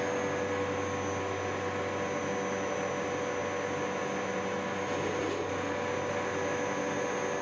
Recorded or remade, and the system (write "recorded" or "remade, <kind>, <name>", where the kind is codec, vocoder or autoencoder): recorded